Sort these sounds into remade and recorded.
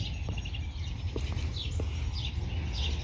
recorded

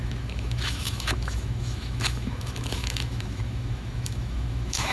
remade